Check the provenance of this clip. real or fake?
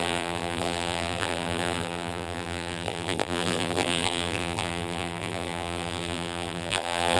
fake